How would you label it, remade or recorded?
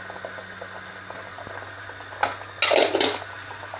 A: recorded